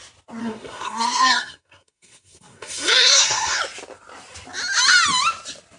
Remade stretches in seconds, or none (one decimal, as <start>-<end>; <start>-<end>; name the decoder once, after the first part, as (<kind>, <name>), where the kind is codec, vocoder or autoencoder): 0.4-3.6 (codec, SNAC)

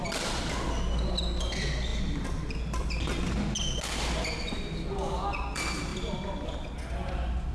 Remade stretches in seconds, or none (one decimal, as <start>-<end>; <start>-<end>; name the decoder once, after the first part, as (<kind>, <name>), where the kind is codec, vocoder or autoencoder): none

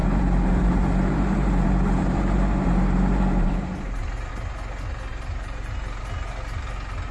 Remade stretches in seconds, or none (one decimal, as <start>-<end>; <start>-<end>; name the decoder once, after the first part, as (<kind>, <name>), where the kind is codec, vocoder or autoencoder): 0.0-4.3 (vocoder, BigVGAN v2); 5.1-6.0